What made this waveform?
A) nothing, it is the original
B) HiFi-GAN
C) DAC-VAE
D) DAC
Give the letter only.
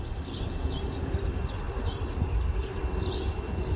A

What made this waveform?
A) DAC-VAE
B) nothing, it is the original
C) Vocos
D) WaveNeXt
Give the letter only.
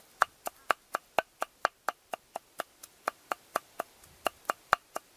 B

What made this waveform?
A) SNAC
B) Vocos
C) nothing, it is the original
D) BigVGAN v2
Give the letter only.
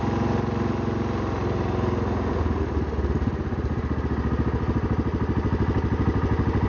C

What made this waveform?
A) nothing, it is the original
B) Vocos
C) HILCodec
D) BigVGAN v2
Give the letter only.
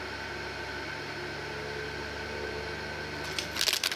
A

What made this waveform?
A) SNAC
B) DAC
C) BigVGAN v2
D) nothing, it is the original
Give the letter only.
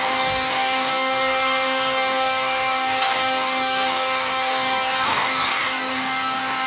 B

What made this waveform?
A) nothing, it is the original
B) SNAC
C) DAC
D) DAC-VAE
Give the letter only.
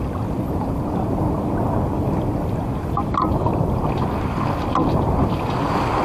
A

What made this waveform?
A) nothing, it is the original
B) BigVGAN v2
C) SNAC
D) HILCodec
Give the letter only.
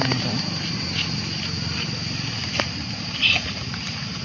A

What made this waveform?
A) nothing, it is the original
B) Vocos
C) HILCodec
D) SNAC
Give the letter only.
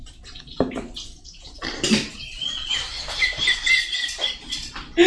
A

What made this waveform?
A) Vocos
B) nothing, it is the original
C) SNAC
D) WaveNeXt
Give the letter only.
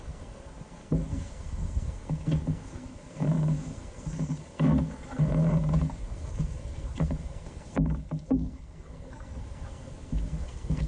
C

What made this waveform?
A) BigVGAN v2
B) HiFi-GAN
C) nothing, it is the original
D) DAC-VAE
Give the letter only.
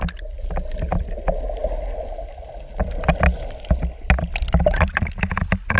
C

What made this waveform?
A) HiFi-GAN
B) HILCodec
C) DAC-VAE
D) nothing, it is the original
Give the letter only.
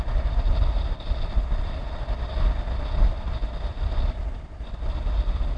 D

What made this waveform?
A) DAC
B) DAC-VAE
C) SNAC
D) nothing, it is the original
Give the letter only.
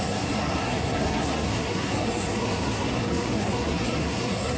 C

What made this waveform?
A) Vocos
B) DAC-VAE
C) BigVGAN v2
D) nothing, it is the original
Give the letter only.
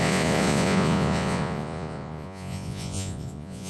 A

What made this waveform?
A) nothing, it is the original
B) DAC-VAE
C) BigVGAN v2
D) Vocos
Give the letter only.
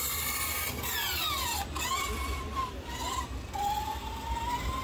A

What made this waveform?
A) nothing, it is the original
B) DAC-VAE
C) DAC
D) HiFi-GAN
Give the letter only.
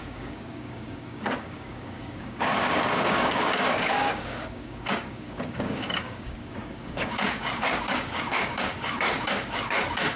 C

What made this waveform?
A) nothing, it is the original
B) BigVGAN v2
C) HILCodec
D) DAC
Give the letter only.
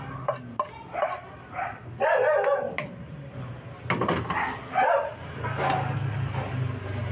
A